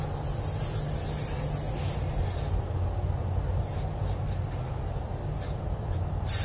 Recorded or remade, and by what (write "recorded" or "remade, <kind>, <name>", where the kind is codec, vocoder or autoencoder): recorded